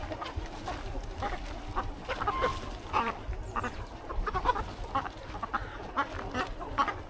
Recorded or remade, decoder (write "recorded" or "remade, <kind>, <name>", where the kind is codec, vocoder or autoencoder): remade, vocoder, BigVGAN v2